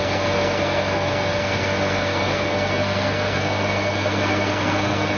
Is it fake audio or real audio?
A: fake